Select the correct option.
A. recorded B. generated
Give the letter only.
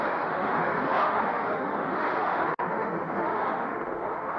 B